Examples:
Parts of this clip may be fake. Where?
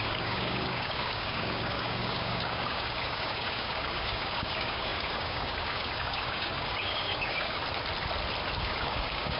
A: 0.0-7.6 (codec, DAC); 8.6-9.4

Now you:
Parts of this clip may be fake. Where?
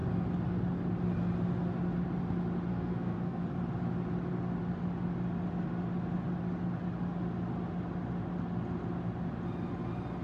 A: 2.7-3.4 (codec, SNAC)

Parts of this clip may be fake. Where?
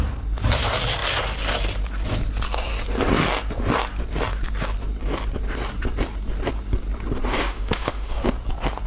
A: 7.3-8.2 (autoencoder, DAC-VAE)